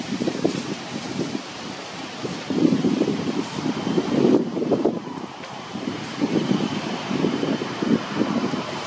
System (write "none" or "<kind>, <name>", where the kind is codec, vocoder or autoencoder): vocoder, BigVGAN v2